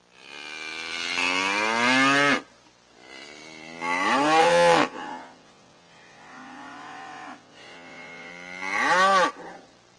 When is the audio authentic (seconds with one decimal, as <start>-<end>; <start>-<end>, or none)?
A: 0.0-4.4; 8.3-10.0